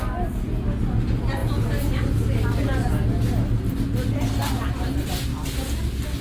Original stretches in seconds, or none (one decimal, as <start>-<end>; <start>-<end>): 0.0-6.2